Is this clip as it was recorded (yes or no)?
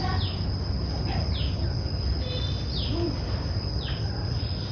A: yes